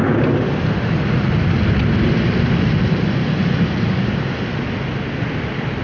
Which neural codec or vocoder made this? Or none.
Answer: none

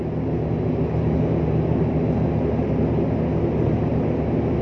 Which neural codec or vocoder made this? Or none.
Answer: none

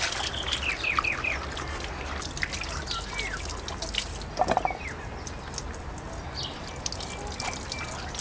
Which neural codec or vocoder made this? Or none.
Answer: none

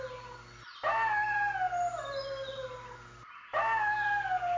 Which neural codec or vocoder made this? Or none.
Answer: none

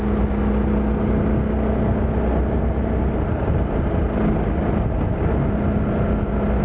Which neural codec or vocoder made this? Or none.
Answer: none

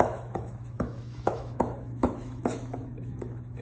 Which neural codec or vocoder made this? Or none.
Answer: autoencoder, DAC-VAE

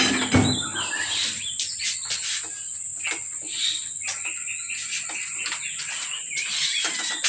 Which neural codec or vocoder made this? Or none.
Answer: none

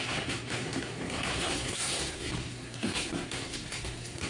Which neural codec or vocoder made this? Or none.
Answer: codec, SNAC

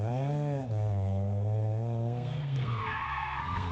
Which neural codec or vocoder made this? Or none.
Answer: codec, SNAC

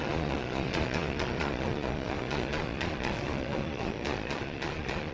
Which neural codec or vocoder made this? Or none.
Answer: vocoder, Vocos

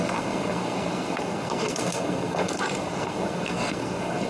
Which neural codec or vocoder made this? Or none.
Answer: codec, SNAC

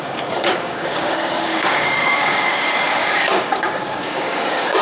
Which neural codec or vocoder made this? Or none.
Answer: codec, DAC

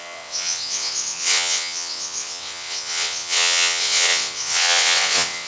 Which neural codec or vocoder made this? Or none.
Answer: vocoder, WaveNeXt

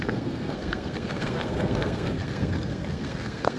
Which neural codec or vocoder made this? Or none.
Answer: codec, SNAC